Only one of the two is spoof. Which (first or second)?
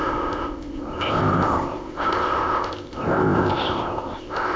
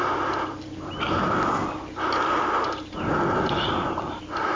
first